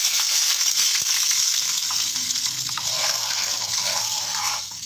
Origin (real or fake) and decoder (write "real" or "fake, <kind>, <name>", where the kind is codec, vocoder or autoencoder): fake, codec, SNAC